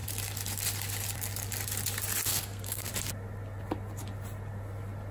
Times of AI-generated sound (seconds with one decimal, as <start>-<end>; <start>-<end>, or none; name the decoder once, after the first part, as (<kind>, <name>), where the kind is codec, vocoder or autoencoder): 2.3-2.9 (codec, SNAC)